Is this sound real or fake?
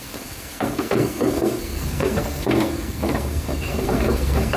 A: fake